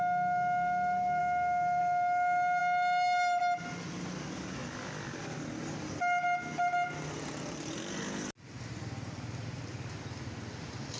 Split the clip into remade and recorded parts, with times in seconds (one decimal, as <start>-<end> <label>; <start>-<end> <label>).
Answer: 0.0-11.0 recorded